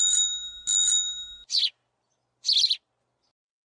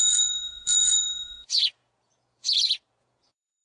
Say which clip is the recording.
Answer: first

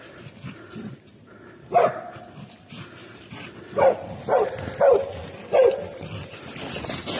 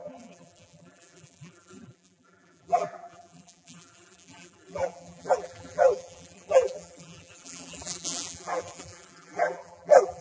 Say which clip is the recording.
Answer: first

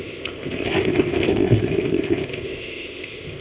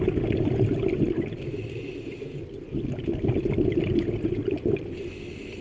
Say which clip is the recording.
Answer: second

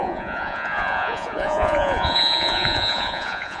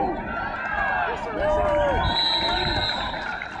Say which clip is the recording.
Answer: second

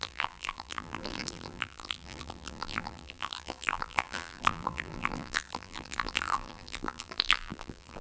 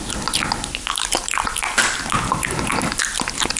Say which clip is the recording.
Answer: second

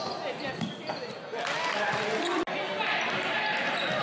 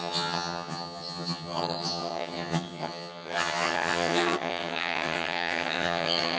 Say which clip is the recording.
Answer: first